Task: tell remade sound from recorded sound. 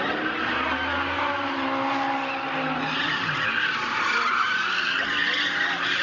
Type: recorded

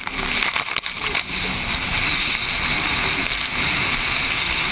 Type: remade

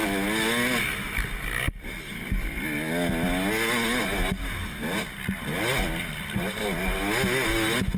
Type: recorded